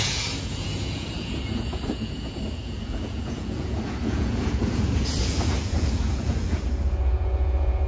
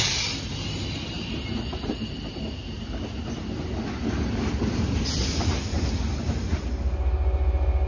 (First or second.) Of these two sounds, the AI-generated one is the first